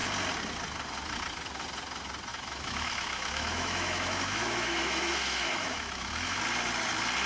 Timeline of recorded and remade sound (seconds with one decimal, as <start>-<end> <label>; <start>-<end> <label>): 0.0-2.3 recorded; 2.3-6.4 remade; 6.4-7.3 recorded